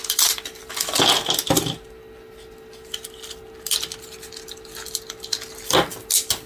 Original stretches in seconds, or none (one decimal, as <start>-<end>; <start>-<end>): 0.0-6.5